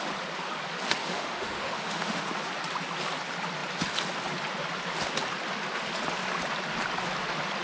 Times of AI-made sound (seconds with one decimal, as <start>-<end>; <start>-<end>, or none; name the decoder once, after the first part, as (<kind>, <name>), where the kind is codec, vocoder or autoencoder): 1.0-2.2 (autoencoder, DAC-VAE)